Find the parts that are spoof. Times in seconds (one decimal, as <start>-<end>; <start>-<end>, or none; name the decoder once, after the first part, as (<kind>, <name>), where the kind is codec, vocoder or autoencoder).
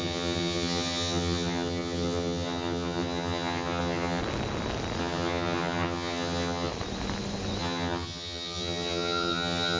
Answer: 0.0-4.2 (vocoder, HiFi-GAN); 5.0-6.7; 7.6-9.8